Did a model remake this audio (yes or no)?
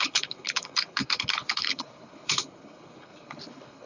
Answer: yes